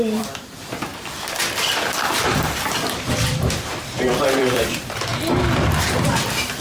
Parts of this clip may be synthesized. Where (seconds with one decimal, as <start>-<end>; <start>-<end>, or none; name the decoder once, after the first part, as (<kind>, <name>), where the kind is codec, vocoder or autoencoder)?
0.0-0.9 (vocoder, BigVGAN v2); 3.1-5.1; 6.0-6.6